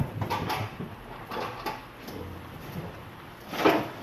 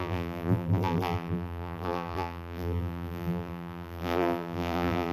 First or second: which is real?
first